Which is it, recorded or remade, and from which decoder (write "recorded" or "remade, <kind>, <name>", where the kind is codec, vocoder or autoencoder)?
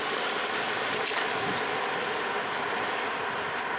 recorded